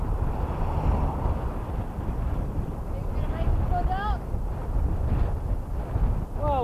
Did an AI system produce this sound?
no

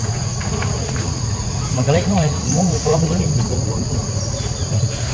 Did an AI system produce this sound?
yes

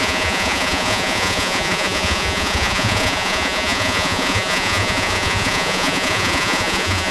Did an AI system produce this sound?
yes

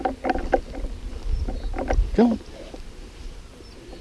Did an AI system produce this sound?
no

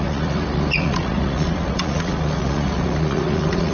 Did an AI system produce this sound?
yes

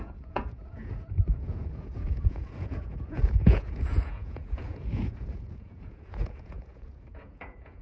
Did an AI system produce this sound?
yes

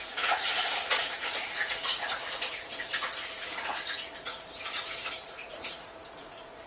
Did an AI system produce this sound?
yes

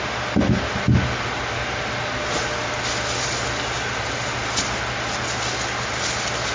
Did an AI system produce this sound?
no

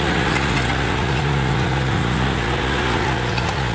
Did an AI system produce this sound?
yes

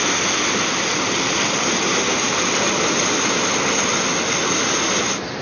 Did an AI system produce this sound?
no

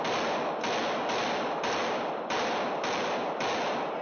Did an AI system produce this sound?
no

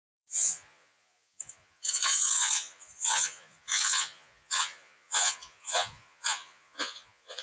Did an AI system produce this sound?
yes